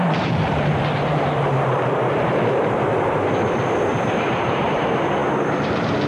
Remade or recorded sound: remade